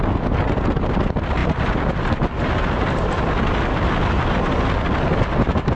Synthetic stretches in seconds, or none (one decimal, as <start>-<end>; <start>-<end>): none